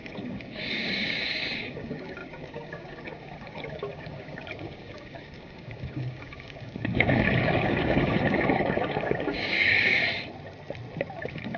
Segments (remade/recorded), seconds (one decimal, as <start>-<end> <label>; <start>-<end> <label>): 0.0-10.0 remade; 10.0-11.2 recorded; 11.2-11.6 remade